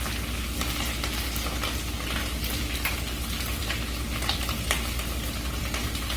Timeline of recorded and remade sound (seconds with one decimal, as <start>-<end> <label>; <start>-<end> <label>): 0.0-6.2 recorded